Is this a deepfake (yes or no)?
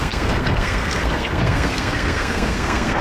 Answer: yes